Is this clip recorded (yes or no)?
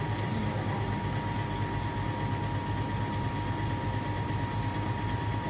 yes